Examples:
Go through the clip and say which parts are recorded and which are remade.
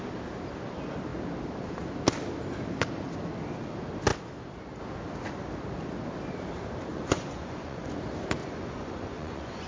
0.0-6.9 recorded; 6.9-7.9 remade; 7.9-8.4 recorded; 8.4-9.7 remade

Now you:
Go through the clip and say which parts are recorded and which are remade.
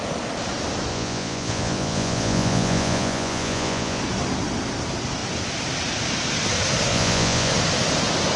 0.0-0.9 recorded; 0.9-4.0 remade; 4.0-6.9 recorded; 6.9-7.5 remade; 7.5-8.4 recorded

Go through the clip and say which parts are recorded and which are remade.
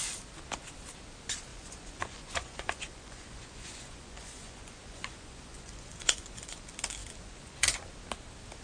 0.0-1.5 recorded; 1.5-6.6 remade; 6.6-7.0 recorded; 7.0-7.9 remade; 7.9-8.6 recorded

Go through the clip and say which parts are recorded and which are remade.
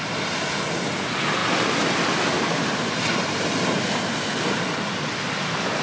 0.0-5.8 recorded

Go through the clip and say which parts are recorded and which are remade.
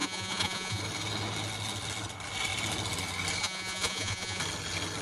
0.0-0.8 remade; 0.8-3.4 recorded; 3.4-4.4 remade; 4.4-5.0 recorded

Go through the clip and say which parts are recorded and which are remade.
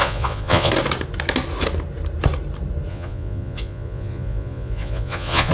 0.0-0.7 remade; 0.7-2.9 recorded; 2.9-5.5 remade